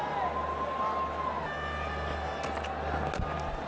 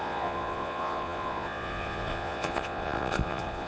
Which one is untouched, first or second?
first